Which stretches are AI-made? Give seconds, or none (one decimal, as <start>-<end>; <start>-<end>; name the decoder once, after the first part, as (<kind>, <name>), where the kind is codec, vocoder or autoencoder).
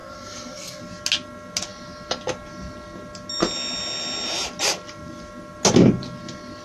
0.0-0.8 (codec, SNAC)